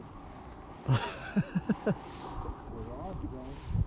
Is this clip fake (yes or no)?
no